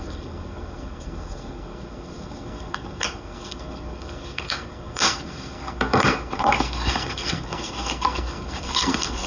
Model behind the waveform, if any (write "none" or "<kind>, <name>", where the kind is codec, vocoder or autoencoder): codec, SNAC